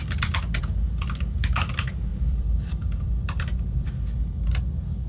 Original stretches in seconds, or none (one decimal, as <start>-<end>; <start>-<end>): 0.6-2.1; 3.9-5.1